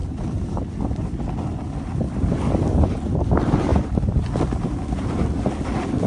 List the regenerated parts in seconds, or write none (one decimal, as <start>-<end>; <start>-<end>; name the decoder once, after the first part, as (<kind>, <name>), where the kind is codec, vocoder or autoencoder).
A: 3.7-5.3 (vocoder, BigVGAN v2)